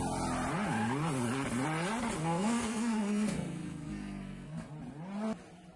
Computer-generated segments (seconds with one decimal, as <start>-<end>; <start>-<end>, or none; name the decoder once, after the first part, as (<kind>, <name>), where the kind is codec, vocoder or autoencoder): 2.2-4.7 (codec, SNAC)